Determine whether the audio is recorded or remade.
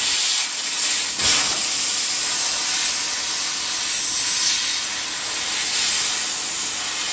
recorded